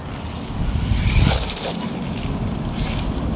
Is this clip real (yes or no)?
yes